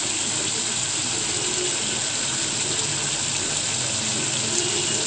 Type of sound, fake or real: real